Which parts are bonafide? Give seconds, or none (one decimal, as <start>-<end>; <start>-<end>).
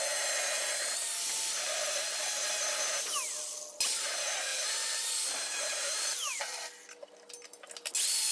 0.0-4.5; 6.4-8.3